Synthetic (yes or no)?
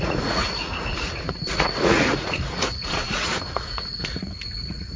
yes